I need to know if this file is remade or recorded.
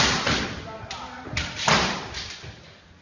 recorded